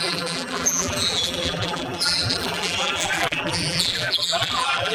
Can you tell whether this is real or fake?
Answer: fake